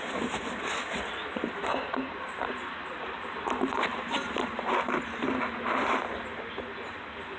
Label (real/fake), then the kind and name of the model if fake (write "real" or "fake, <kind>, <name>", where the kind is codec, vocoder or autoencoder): real